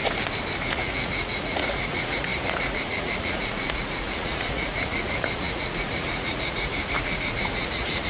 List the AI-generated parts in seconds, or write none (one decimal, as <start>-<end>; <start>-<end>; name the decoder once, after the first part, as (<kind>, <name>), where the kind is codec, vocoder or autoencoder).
0.6-8.1 (vocoder, Vocos)